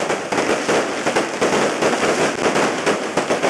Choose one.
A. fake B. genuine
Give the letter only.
B